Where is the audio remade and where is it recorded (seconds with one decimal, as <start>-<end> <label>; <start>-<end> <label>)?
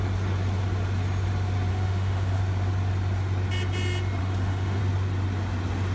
0.0-1.7 recorded; 1.7-2.4 remade; 2.4-4.2 recorded; 4.2-4.8 remade; 4.8-5.9 recorded